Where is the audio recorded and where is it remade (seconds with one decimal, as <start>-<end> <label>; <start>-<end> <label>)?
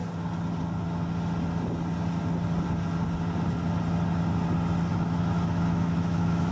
0.0-4.9 recorded; 4.9-6.5 remade